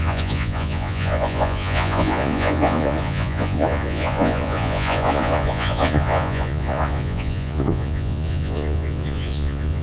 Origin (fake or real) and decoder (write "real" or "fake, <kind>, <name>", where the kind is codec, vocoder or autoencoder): fake, vocoder, Vocos